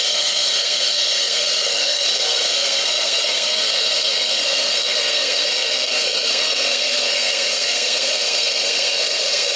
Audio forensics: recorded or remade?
remade